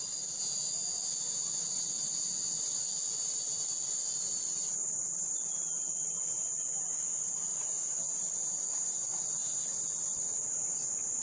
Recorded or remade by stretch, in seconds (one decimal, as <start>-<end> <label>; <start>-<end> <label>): 0.0-7.5 recorded; 7.5-8.0 remade; 8.0-11.2 recorded